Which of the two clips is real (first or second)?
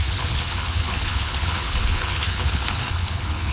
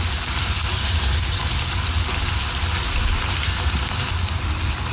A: second